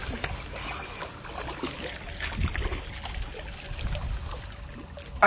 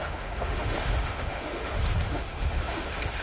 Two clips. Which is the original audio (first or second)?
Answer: first